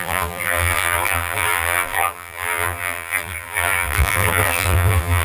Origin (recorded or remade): remade